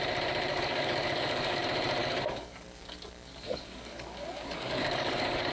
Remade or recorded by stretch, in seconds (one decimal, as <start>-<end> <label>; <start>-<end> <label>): 0.0-0.5 recorded; 0.5-1.6 remade; 1.6-2.0 recorded; 2.0-5.5 remade